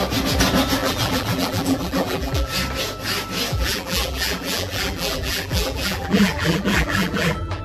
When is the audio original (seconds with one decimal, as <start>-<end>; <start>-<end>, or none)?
0.0-0.8; 2.5-3.5